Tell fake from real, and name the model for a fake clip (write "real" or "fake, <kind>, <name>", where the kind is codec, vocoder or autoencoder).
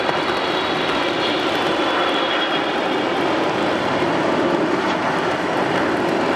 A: real